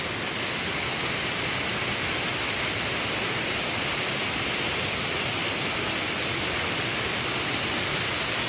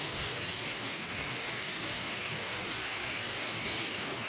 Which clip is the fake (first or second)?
second